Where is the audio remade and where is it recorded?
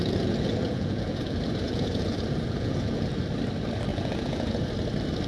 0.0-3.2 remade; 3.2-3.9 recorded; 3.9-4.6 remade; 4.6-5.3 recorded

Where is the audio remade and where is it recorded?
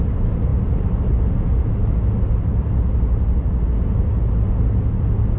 0.0-5.4 recorded